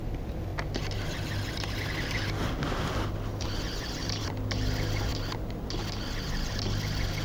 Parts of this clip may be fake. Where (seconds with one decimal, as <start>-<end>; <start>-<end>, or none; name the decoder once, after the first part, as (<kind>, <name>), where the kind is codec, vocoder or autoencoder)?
3.3-4.3 (vocoder, BigVGAN v2)